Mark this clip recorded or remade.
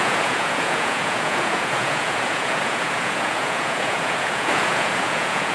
remade